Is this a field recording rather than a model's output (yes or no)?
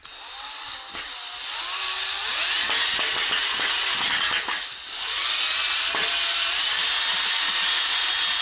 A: yes